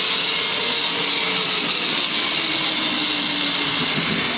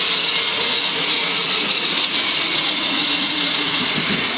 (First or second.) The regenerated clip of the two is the second